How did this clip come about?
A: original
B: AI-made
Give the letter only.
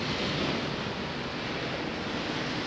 A